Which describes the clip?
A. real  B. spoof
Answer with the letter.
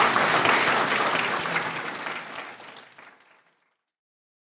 A